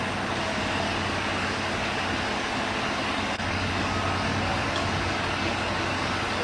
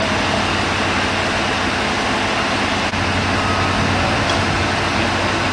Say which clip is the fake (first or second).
first